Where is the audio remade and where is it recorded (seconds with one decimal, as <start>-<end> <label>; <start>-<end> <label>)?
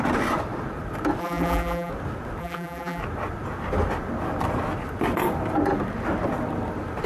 0.0-1.2 recorded; 1.2-1.9 remade; 1.9-2.4 recorded; 2.4-3.0 remade; 3.0-7.1 recorded